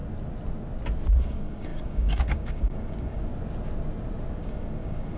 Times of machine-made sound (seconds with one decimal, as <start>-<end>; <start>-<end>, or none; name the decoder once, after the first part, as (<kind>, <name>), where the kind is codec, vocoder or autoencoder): 1.2-3.3 (codec, DAC); 4.4-5.2

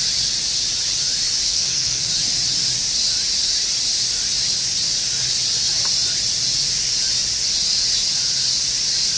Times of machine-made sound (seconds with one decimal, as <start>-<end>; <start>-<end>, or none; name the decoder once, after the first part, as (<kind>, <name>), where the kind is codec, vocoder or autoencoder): 1.5-2.1 (codec, SNAC)